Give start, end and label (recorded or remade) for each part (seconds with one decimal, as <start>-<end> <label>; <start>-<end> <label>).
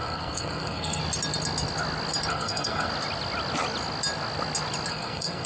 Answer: 0.0-1.0 remade; 1.0-2.3 recorded; 2.3-2.9 remade; 2.9-4.9 recorded; 4.9-5.5 remade